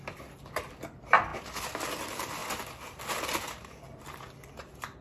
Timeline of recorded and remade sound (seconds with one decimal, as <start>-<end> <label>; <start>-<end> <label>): 0.0-5.0 recorded